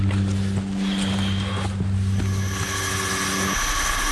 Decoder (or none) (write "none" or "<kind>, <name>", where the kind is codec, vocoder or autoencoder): none